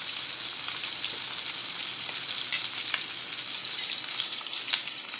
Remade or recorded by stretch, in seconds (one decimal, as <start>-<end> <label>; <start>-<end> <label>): 0.0-5.2 recorded